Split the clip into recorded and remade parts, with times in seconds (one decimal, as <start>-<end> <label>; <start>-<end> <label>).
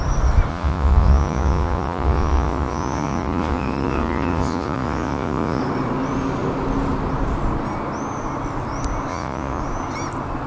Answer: 0.0-0.5 recorded; 0.5-5.6 remade; 5.6-9.1 recorded; 9.1-9.6 remade; 9.6-10.5 recorded